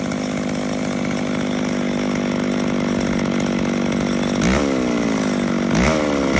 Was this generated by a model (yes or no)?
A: no